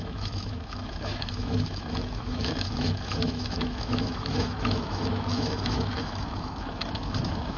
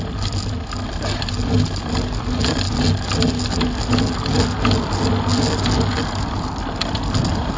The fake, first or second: first